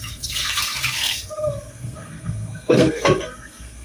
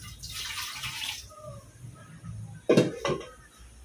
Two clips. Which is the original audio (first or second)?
second